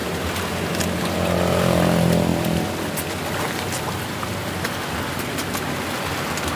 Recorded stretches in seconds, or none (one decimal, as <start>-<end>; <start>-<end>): 0.0-6.6